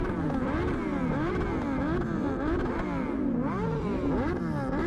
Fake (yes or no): no